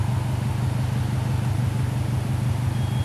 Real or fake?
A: real